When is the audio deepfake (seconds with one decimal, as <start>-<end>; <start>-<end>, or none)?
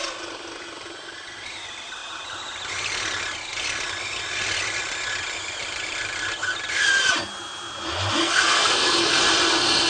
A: 8.2-9.2